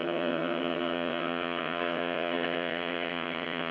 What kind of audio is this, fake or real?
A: fake